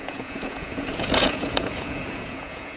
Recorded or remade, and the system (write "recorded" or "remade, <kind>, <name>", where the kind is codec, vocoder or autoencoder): remade, vocoder, Vocos